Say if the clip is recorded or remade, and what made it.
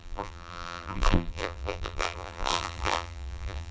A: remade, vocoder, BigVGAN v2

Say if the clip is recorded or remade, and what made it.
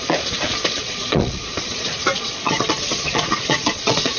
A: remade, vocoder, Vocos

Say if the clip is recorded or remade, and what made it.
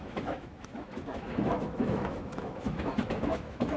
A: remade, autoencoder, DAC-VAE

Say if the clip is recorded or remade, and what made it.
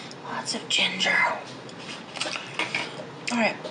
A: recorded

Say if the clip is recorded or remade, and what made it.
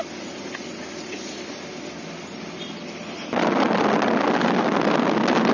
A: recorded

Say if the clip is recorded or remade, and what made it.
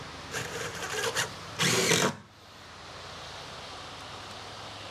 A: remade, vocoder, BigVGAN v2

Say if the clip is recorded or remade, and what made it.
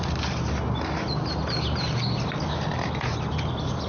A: recorded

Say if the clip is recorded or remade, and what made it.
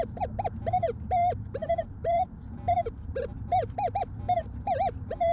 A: remade, vocoder, BigVGAN v2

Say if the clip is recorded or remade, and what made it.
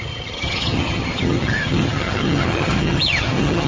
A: remade, vocoder, HiFi-GAN